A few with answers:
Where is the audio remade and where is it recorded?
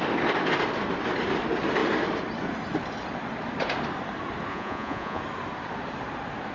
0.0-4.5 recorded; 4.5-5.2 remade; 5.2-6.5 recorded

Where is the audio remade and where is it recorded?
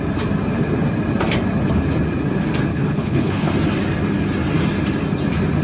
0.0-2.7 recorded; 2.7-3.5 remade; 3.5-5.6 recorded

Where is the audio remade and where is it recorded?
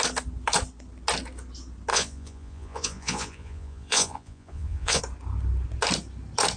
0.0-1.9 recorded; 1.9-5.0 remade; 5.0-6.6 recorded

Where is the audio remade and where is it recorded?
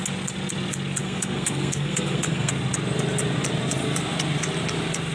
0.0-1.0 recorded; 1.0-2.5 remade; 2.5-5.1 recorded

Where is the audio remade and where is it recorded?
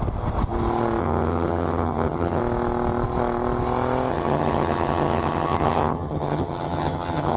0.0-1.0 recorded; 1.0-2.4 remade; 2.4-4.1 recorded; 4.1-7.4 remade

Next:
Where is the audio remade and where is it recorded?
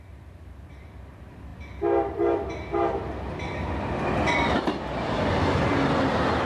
0.0-6.5 recorded